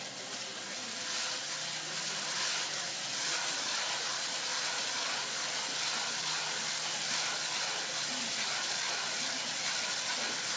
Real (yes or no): yes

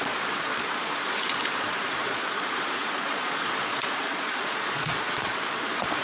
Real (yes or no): no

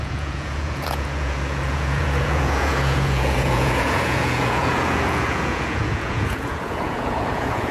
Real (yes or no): no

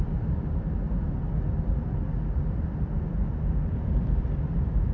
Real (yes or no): yes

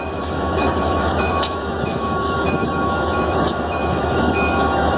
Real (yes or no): no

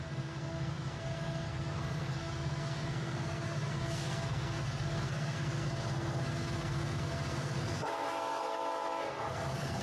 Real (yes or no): no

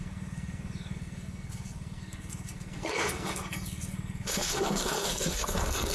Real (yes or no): no